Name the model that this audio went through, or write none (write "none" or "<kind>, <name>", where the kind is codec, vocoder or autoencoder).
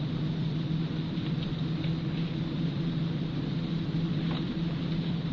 none